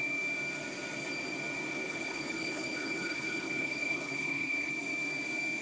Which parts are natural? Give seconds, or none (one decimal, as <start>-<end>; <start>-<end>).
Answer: 0.0-1.9; 4.7-5.6